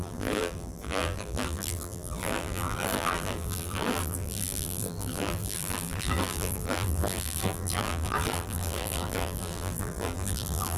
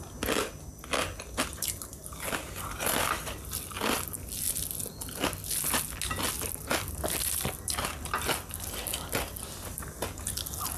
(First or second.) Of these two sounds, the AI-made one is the first